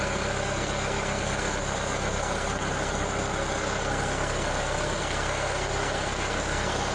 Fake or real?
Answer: fake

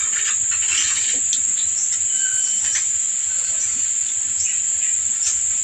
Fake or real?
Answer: real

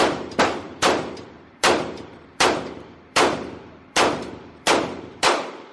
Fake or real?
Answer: fake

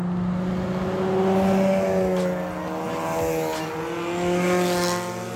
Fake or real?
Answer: real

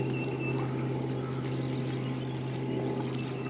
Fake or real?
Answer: real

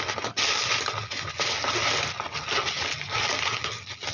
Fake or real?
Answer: real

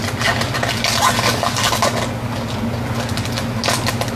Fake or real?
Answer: real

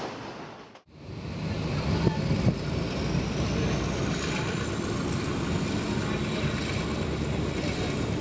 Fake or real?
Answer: real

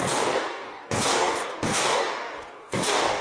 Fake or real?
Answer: fake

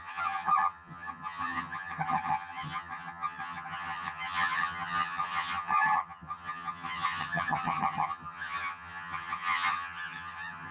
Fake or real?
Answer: fake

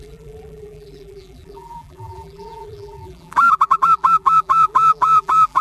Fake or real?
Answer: fake